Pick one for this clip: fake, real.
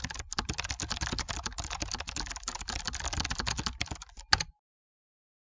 real